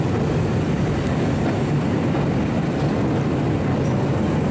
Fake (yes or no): no